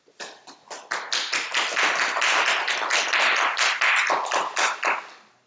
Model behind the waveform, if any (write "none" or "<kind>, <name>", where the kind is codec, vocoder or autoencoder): none